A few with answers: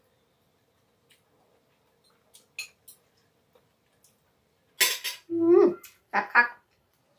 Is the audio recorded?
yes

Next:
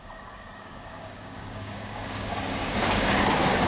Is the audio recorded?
no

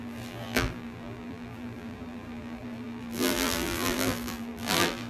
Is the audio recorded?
no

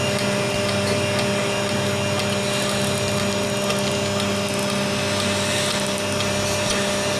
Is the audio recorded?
yes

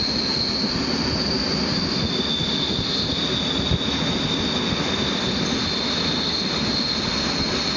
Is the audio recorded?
yes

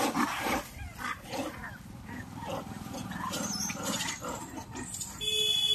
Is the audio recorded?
yes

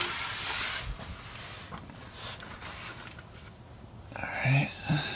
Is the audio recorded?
yes